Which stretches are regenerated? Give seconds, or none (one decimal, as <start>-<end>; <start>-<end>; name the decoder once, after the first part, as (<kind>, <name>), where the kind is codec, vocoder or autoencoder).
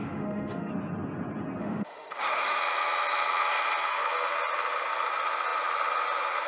0.0-0.7 (autoencoder, DAC-VAE); 1.6-2.6